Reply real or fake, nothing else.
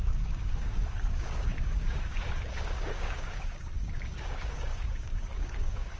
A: fake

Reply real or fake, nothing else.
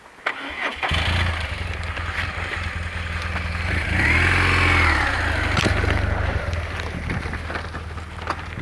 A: real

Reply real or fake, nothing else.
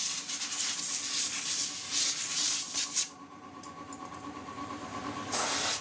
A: fake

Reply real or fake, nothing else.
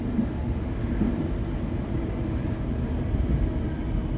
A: real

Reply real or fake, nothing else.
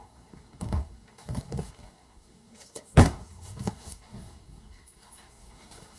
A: fake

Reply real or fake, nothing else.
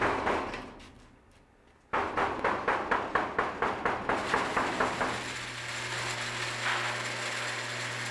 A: real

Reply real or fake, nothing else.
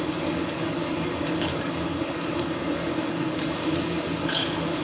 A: fake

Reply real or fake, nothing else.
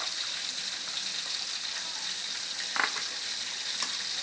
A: fake